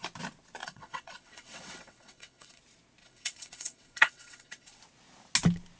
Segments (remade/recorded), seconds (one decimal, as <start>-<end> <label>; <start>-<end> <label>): 0.0-0.6 recorded; 0.6-2.6 remade; 2.6-3.0 recorded; 3.0-4.8 remade; 4.8-5.8 recorded